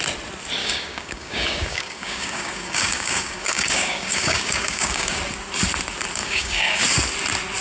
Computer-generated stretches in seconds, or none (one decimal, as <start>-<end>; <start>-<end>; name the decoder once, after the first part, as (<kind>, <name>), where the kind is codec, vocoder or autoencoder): 0.6-5.2 (codec, DAC); 6.2-6.8